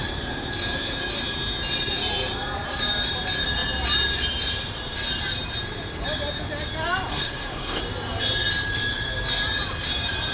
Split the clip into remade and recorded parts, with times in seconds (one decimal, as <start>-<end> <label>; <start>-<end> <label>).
0.0-7.1 recorded; 7.1-7.8 remade; 7.8-10.3 recorded